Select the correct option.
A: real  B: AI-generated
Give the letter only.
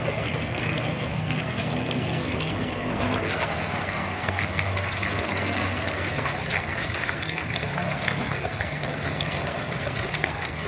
B